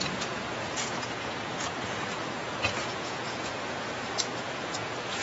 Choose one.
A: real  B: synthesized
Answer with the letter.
B